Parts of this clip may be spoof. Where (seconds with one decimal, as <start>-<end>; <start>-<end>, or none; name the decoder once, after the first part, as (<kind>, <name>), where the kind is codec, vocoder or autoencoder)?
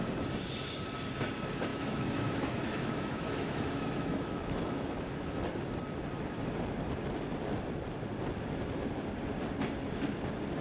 1.7-5.4 (autoencoder, DAC-VAE)